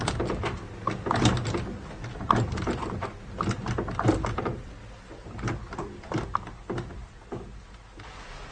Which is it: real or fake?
real